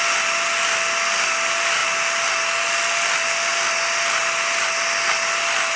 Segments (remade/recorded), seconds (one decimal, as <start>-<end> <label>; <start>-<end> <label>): 0.0-5.8 recorded